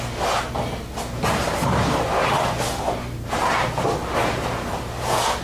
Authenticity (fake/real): real